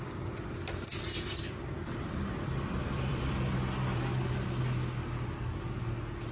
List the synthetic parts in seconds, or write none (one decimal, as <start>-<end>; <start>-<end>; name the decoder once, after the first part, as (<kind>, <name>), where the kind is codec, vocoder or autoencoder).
0.9-4.0 (vocoder, BigVGAN v2)

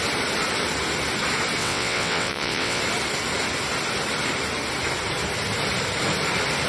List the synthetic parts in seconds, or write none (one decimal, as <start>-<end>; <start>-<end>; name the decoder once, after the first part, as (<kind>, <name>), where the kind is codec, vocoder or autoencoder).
1.6-2.8 (vocoder, WaveNeXt)

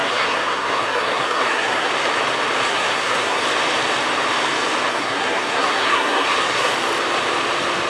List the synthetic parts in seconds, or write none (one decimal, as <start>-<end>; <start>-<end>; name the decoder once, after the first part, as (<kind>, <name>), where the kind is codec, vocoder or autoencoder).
0.0-1.9 (codec, SNAC); 2.7-3.4; 4.9-6.7

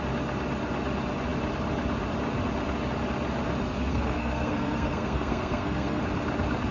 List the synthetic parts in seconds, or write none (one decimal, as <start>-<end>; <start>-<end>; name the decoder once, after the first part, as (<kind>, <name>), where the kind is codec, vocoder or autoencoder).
3.9-6.0 (codec, SNAC)

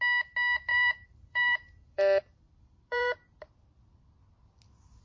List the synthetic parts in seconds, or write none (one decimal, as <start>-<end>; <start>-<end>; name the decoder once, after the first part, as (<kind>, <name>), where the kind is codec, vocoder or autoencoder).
0.7-3.4 (vocoder, BigVGAN v2)

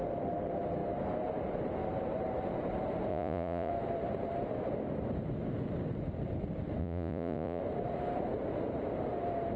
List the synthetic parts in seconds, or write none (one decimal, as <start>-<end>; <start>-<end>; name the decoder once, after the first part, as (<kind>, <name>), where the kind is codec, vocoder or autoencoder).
3.1-3.7 (vocoder, Vocos); 6.8-7.6

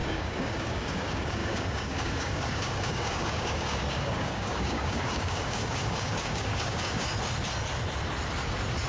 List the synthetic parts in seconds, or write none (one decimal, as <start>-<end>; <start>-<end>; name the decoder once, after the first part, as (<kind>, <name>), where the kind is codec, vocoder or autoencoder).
0.0-7.1 (codec, DAC)

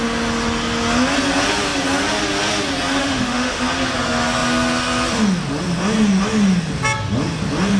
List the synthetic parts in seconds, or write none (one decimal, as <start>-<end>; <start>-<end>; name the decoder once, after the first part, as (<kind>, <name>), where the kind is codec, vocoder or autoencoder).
3.0-3.6 (autoencoder, DAC-VAE)